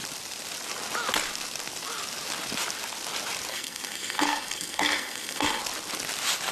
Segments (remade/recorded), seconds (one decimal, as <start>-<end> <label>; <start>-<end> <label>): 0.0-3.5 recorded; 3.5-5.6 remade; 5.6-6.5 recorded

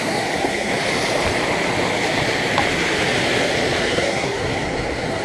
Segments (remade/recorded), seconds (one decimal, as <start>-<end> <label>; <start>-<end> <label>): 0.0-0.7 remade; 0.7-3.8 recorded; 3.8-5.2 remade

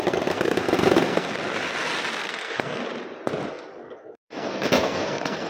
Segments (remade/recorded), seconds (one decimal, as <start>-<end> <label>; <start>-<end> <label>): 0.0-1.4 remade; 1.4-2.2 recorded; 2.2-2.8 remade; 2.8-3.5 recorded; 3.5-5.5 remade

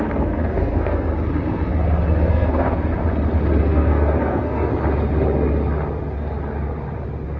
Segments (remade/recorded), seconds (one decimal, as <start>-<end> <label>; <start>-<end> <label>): 0.0-1.1 remade; 1.1-2.3 recorded; 2.3-2.9 remade; 2.9-3.6 recorded; 3.6-4.7 remade; 4.7-7.4 recorded

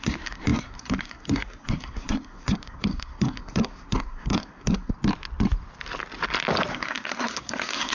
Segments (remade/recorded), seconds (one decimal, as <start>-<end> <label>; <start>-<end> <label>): 0.0-4.9 remade; 4.9-6.7 recorded; 6.7-7.9 remade